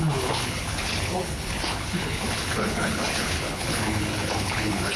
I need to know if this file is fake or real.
fake